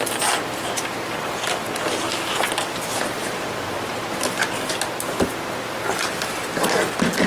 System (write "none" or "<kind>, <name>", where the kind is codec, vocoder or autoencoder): none